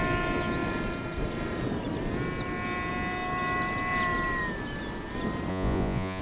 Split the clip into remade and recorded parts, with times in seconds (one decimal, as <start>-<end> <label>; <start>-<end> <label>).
0.0-5.5 recorded; 5.5-6.2 remade